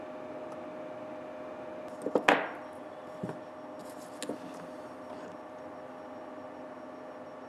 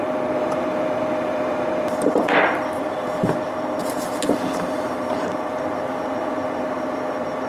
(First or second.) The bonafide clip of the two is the first